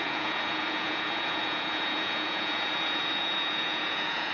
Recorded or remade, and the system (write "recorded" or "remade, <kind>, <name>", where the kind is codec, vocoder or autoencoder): remade, vocoder, Vocos